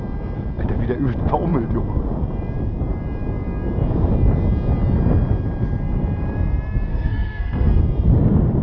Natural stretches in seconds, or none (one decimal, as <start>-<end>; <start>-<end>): 0.0-6.9; 7.8-8.6